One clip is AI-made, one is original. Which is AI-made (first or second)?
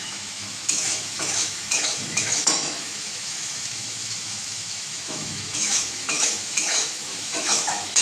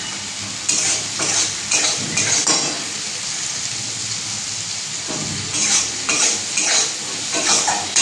first